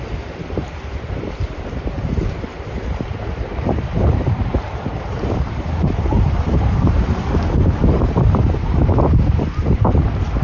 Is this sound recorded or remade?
remade